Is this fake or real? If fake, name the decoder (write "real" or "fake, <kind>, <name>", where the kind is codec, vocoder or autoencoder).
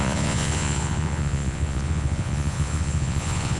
fake, vocoder, Vocos